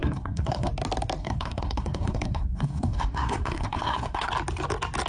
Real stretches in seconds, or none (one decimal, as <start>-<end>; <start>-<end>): 0.7-1.2; 4.3-5.1